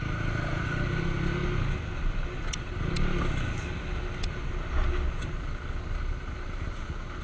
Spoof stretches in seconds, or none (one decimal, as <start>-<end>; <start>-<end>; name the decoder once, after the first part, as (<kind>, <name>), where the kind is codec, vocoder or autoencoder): none